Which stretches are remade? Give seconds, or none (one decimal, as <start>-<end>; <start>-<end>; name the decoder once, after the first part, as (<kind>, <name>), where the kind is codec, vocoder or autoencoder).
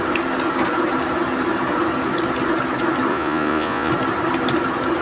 3.1-3.9 (vocoder, Vocos)